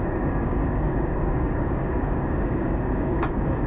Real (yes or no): no